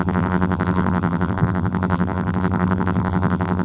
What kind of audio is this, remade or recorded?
remade